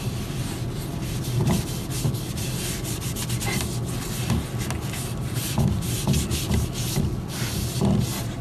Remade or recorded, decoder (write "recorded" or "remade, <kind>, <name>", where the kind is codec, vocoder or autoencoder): recorded